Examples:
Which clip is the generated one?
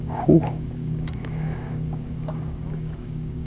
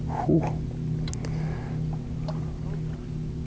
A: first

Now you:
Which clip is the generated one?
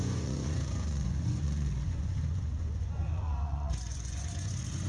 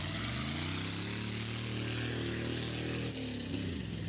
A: first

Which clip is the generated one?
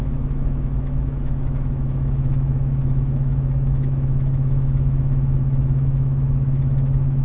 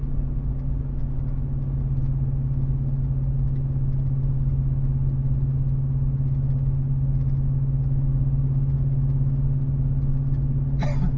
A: first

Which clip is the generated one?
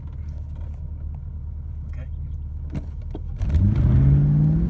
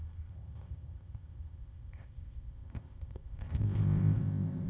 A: second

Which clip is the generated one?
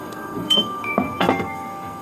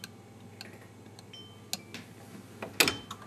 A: first